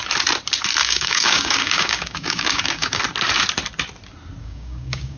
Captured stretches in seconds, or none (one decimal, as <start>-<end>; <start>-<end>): 0.0-0.8; 3.0-4.4